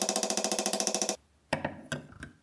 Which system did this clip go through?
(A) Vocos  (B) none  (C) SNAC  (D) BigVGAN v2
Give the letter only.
B